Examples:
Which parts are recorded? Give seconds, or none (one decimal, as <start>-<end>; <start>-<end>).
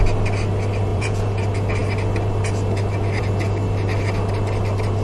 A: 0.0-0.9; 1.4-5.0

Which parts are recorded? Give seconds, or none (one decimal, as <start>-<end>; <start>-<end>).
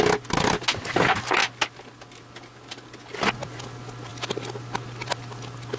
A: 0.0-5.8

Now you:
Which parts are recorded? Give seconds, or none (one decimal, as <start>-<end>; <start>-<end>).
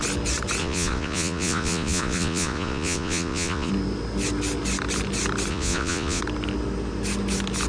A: 0.0-0.6; 3.7-5.5; 6.2-7.7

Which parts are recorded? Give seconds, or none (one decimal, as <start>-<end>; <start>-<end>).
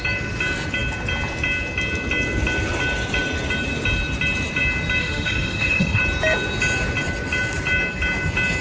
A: 0.0-5.0; 6.0-8.6